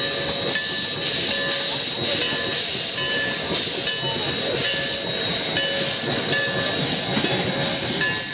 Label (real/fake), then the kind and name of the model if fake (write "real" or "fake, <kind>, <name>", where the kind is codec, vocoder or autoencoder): real